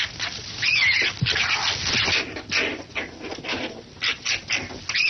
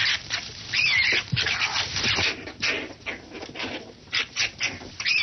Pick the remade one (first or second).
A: second